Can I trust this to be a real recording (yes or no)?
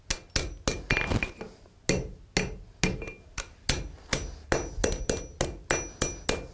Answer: yes